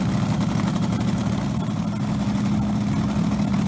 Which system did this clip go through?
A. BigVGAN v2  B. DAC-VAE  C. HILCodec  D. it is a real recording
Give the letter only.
D